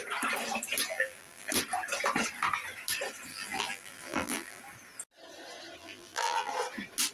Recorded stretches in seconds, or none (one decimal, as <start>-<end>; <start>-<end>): 0.0-0.9; 1.5-3.3; 4.6-5.8; 6.5-7.1

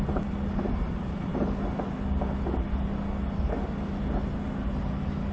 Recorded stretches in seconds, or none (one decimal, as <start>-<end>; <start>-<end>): 0.0-5.3

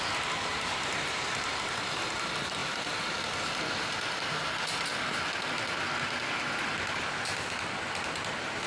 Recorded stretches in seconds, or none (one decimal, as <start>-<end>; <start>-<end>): 0.0-0.5; 1.7-8.7

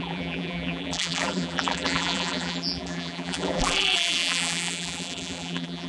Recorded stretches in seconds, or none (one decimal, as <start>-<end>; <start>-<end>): none

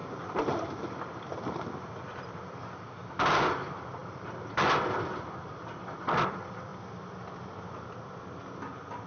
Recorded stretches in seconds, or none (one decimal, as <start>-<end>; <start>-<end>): 4.0-4.8

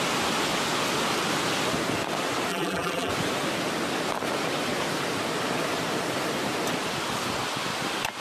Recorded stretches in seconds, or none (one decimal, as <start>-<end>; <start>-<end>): 0.0-2.5; 3.1-8.2

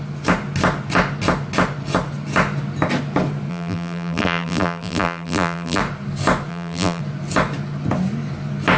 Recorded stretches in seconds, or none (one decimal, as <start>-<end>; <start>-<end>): 0.0-3.5; 5.8-6.5; 7.0-8.8